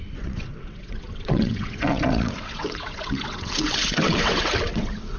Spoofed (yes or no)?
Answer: yes